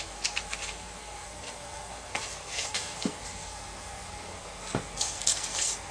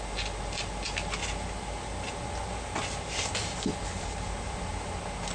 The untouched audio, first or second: second